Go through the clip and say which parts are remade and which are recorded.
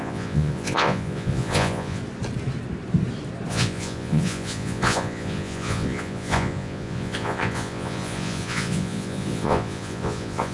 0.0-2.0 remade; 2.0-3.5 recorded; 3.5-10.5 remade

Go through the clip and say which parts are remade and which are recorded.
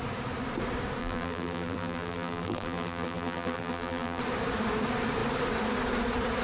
0.0-1.0 recorded; 1.0-4.2 remade; 4.2-6.4 recorded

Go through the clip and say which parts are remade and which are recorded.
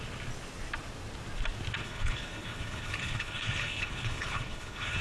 0.0-1.8 recorded; 1.8-5.0 remade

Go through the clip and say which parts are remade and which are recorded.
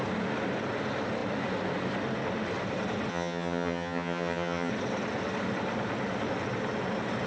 0.0-3.1 recorded; 3.1-4.7 remade; 4.7-7.3 recorded